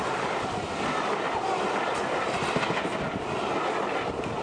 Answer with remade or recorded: recorded